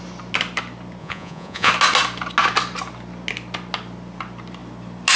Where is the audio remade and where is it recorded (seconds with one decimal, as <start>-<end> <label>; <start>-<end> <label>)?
0.0-1.0 recorded; 1.0-1.7 remade; 1.7-5.2 recorded

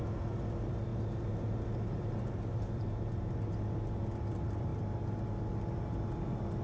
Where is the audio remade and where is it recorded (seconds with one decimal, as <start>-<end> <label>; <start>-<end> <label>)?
0.0-0.9 recorded; 0.9-3.5 remade; 3.5-4.7 recorded; 4.7-5.2 remade; 5.2-6.6 recorded